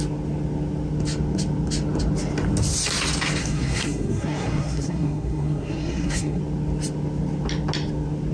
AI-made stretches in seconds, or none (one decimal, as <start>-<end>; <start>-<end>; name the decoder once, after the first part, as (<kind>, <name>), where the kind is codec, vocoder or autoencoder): 3.4-6.4 (codec, SNAC)